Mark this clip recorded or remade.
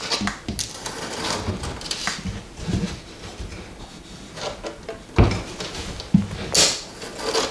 recorded